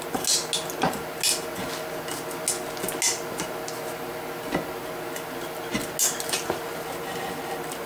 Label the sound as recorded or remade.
recorded